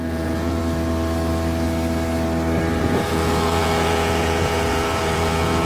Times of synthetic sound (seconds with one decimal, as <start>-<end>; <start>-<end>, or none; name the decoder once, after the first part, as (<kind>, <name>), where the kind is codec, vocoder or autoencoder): 0.0-0.6 (vocoder, Vocos); 2.8-5.7